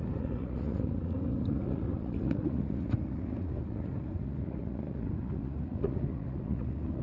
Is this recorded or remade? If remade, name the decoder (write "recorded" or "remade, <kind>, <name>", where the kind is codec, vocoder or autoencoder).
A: remade, vocoder, Vocos